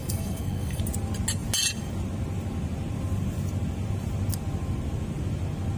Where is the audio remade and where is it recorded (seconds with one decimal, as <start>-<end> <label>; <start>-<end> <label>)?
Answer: 0.0-0.8 remade; 0.8-5.8 recorded